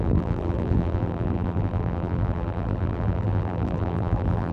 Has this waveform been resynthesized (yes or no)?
yes